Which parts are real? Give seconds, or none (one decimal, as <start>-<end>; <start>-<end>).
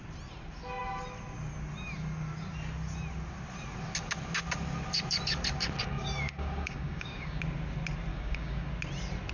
0.0-5.8; 7.4-8.1; 8.7-9.3